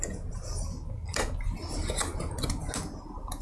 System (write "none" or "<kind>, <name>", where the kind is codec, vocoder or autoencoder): none